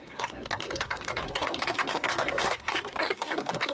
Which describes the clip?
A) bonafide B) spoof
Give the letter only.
B